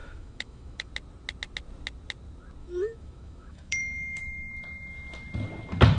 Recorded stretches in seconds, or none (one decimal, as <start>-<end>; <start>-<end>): 0.9-2.6; 4.2-6.0